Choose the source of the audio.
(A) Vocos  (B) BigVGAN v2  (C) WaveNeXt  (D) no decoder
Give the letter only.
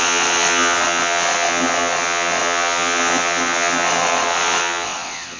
C